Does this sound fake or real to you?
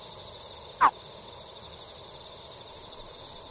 real